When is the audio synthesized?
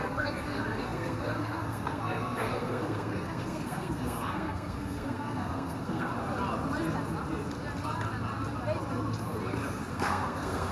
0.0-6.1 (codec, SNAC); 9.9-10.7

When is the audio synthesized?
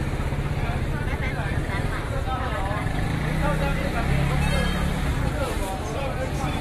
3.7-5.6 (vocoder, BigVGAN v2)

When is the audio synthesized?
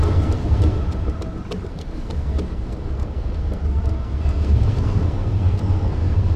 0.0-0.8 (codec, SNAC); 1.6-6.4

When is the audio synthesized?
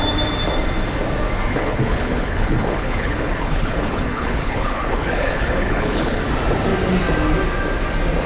1.5-6.2 (codec, HILCodec)